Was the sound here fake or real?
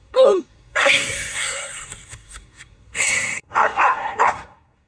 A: fake